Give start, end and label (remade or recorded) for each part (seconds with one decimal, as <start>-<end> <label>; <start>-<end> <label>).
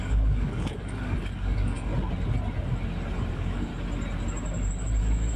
0.0-1.9 remade; 1.9-3.3 recorded; 3.3-3.7 remade; 3.7-5.0 recorded; 5.0-5.4 remade